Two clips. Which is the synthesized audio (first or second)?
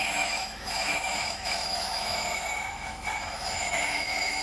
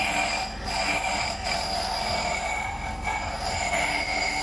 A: first